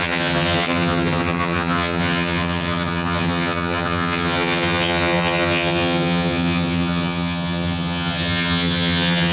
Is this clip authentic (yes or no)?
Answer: no